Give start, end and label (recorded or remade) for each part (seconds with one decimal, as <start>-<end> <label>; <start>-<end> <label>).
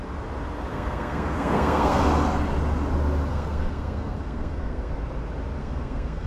0.0-0.7 recorded; 0.7-2.0 remade; 2.0-3.3 recorded; 3.3-4.9 remade; 4.9-5.6 recorded; 5.6-6.3 remade